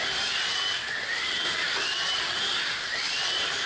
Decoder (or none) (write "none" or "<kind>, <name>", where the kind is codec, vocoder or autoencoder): vocoder, BigVGAN v2